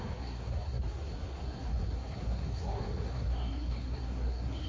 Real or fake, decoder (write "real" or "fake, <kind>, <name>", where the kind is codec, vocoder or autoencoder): fake, codec, SNAC